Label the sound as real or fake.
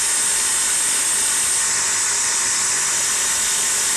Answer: real